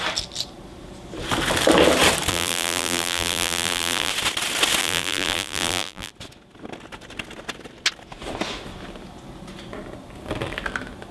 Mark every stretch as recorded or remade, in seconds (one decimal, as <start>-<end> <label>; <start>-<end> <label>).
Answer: 0.0-2.3 recorded; 2.3-4.1 remade; 4.1-4.8 recorded; 4.8-6.1 remade; 6.1-11.1 recorded